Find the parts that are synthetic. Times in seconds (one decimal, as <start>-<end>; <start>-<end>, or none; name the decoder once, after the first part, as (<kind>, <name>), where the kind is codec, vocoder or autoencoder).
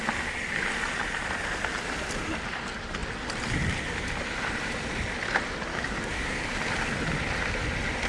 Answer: 5.7-6.4 (codec, DAC)